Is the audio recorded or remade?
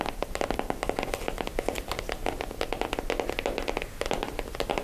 recorded